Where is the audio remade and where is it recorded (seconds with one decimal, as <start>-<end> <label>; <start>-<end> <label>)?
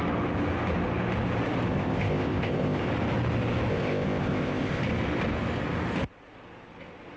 0.0-1.7 recorded; 1.7-2.9 remade; 2.9-3.7 recorded; 3.7-4.8 remade; 4.8-7.2 recorded